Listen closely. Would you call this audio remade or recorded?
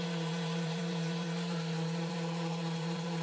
remade